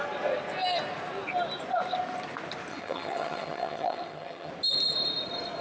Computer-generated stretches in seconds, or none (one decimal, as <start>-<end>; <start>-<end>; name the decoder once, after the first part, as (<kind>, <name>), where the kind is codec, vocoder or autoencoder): 2.7-4.5 (vocoder, HiFi-GAN)